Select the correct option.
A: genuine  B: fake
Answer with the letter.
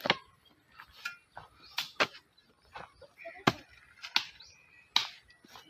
A